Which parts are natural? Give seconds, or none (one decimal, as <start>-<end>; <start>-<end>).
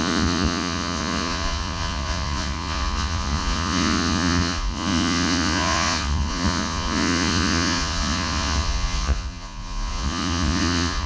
none